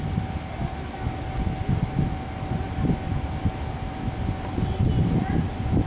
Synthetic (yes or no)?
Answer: no